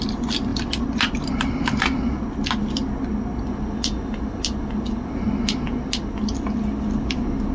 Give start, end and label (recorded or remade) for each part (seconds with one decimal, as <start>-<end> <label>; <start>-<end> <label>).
0.0-0.5 recorded; 0.5-1.3 remade; 1.3-7.5 recorded